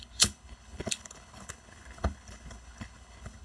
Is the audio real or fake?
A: fake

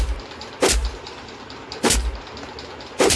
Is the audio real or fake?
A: real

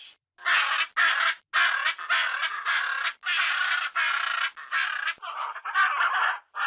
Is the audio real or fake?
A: real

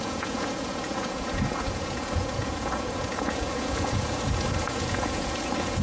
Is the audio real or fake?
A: fake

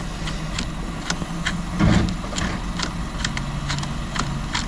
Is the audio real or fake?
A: real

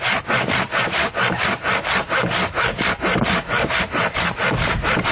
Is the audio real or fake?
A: real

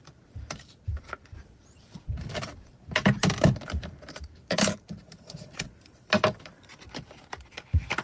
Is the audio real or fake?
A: fake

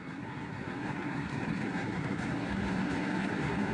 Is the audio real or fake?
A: fake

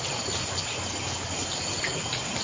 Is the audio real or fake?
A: real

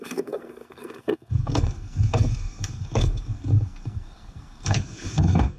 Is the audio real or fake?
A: fake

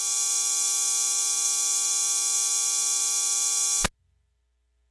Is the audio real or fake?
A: real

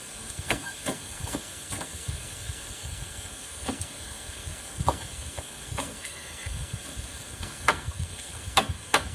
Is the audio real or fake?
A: fake